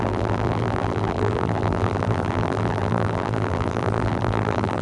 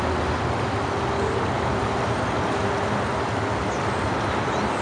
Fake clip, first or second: first